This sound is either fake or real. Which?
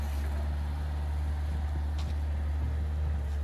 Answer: real